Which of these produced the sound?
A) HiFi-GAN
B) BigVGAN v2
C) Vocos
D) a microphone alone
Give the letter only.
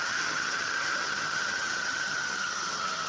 A